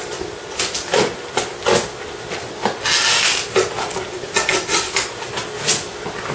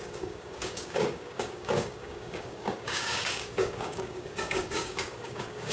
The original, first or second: first